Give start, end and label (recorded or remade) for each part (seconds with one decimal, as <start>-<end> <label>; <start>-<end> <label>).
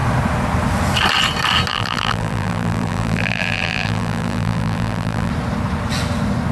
0.0-1.7 recorded; 1.7-5.3 remade; 5.3-6.5 recorded